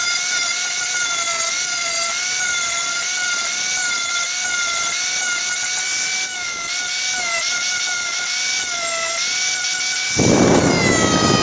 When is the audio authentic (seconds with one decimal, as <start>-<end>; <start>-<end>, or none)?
0.0-11.4